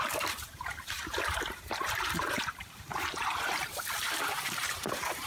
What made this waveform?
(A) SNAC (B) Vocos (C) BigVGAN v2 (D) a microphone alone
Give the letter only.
C